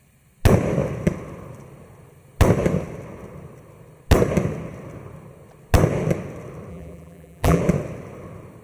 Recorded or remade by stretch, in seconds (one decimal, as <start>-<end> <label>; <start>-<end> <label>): 0.0-6.7 recorded; 6.7-7.6 remade; 7.6-8.6 recorded